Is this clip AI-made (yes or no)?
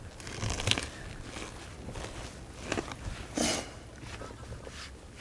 no